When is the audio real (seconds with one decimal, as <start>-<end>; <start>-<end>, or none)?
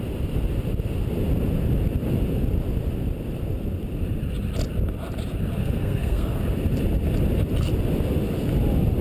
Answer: 0.0-5.6; 6.4-9.0